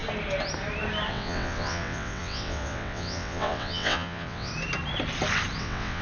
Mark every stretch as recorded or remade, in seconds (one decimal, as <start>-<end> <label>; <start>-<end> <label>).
0.0-1.1 recorded; 1.1-4.5 remade; 4.5-5.6 recorded; 5.6-6.0 remade